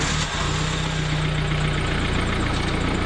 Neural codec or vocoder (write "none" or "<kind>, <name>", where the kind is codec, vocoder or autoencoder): none